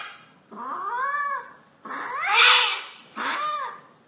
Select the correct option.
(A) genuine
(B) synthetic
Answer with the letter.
A